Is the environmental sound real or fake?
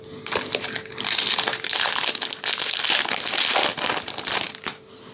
real